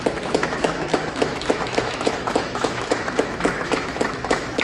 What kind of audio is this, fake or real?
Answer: fake